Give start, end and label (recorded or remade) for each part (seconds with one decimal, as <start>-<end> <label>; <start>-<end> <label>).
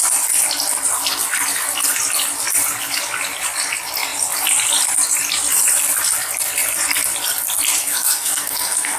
0.0-7.8 recorded; 7.8-9.0 remade